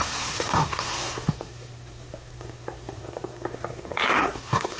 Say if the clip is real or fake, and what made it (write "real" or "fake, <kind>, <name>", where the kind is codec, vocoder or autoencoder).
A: fake, codec, SNAC